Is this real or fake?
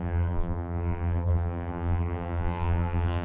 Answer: fake